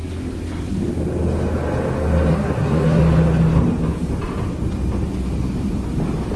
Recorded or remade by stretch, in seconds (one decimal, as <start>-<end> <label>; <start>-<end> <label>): 0.0-2.3 recorded; 2.3-3.0 remade; 3.0-6.4 recorded